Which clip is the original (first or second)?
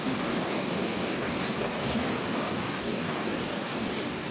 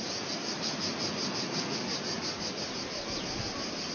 second